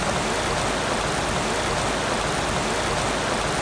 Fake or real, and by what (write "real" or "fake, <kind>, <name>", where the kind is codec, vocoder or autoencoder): real